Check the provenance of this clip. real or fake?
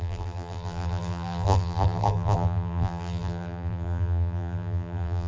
fake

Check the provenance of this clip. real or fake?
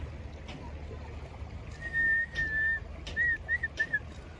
real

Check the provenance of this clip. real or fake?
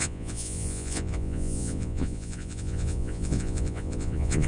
fake